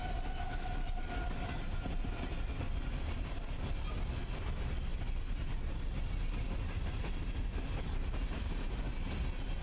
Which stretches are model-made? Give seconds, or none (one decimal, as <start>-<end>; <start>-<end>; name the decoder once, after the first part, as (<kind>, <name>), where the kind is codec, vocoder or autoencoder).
none